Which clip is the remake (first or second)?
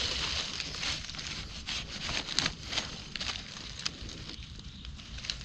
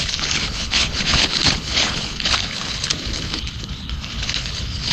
second